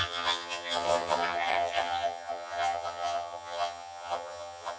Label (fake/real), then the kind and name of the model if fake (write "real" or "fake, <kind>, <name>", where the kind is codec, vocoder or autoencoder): fake, vocoder, HiFi-GAN